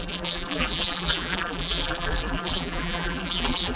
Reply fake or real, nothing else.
fake